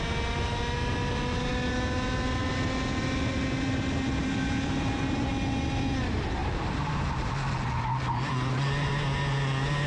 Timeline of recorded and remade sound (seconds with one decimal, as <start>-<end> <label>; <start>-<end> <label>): 0.0-4.2 recorded; 4.2-5.3 remade; 5.3-6.4 recorded; 6.4-6.9 remade; 6.9-9.9 recorded